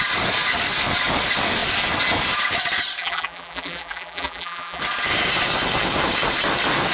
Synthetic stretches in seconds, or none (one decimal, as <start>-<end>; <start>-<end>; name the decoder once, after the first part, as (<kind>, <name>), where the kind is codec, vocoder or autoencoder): 3.0-4.8 (vocoder, BigVGAN v2)